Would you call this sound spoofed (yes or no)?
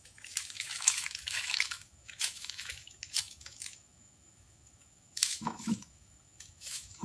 yes